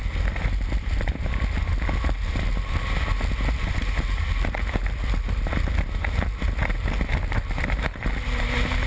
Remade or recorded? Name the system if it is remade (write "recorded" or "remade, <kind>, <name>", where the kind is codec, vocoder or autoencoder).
recorded